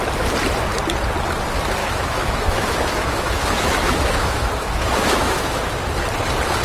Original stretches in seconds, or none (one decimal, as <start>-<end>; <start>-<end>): 0.0-1.8; 5.8-6.6